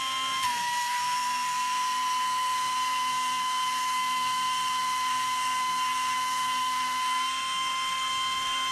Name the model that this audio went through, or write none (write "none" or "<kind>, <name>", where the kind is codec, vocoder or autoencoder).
codec, SNAC